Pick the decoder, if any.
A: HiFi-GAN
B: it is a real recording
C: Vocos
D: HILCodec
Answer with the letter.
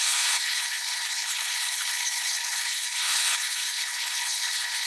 D